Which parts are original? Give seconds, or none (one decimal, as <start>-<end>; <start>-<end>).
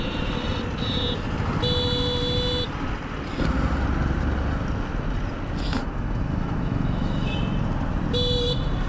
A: 0.0-5.8; 7.3-8.9